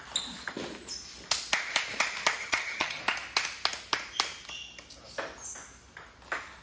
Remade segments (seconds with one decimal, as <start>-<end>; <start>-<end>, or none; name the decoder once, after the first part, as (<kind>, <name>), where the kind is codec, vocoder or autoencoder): 2.4-3.0 (vocoder, HiFi-GAN)